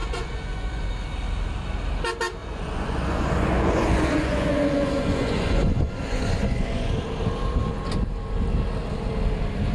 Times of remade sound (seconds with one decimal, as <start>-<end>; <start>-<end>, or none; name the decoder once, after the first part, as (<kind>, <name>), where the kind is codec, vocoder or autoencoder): 0.0-0.9 (vocoder, Vocos); 2.4-6.9